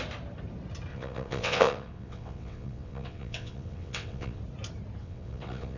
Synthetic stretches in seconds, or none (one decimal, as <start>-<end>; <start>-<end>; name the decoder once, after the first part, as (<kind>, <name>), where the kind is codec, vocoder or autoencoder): 0.9-4.4 (vocoder, WaveNeXt); 5.0-5.8